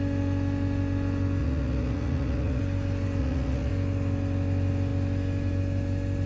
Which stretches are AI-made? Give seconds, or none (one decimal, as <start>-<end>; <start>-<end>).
1.4-2.6; 3.2-3.7